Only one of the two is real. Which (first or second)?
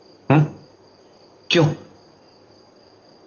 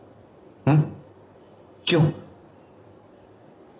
first